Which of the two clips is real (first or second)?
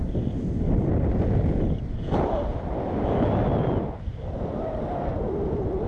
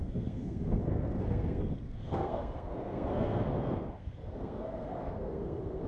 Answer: first